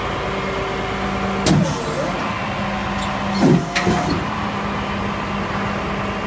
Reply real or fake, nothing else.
real